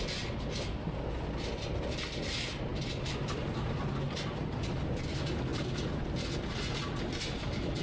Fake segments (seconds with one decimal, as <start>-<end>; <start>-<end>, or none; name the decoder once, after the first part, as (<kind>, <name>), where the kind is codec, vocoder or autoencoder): none